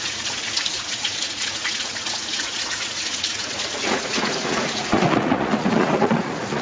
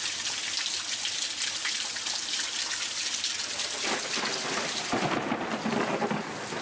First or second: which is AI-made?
first